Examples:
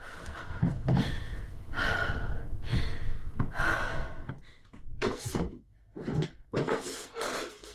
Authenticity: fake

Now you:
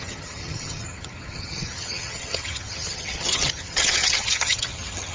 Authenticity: fake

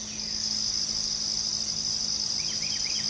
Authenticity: real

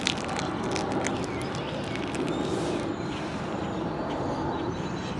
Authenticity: real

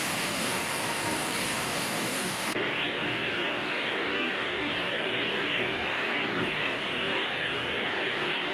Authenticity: fake